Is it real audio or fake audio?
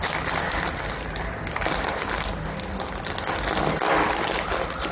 real